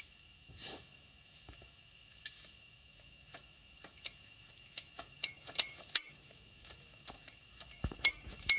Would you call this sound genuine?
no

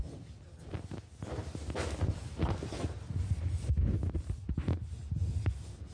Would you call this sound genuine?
yes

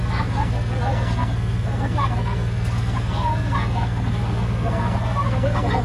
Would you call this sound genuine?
no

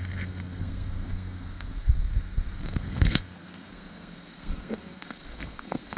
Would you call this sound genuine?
no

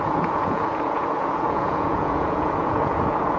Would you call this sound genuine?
no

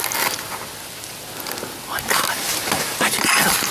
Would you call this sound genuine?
yes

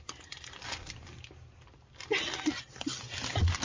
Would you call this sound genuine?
yes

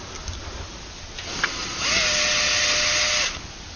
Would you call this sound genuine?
yes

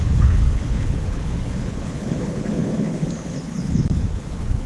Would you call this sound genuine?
no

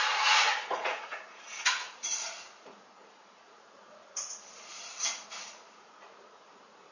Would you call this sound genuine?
no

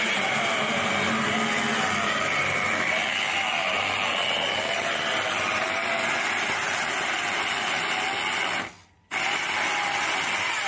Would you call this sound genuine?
yes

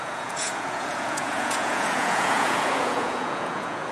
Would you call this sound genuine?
no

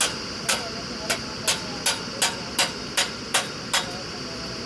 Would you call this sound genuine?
yes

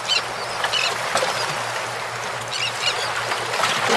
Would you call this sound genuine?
yes